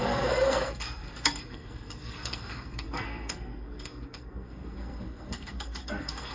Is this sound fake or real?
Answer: fake